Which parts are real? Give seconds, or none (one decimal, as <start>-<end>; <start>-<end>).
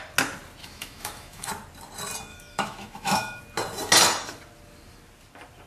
0.0-0.6; 1.5-2.3; 3.4-5.7